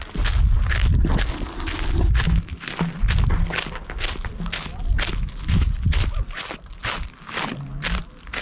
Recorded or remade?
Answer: recorded